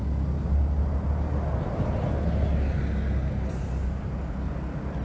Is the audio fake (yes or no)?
no